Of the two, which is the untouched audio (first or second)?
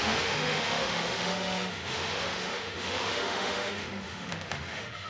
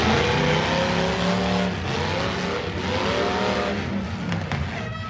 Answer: second